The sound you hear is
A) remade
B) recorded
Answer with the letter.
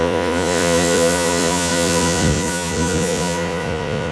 A